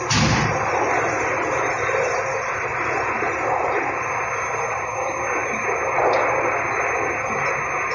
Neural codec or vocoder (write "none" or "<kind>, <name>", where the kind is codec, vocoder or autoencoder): none